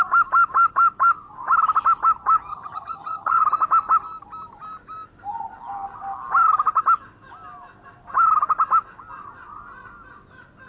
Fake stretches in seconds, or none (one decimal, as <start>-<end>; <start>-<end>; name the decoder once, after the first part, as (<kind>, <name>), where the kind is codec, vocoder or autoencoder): 2.5-3.4 (vocoder, HiFi-GAN)